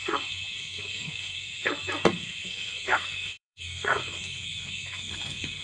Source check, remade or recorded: remade